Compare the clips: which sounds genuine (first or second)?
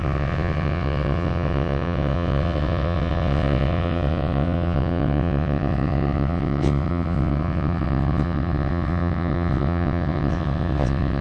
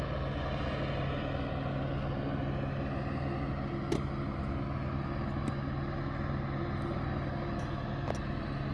second